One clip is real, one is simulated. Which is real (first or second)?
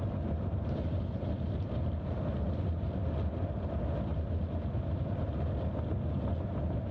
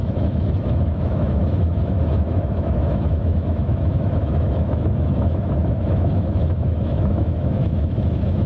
first